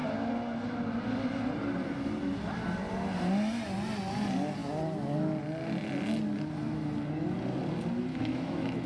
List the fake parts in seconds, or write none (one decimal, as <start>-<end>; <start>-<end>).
8.1-8.9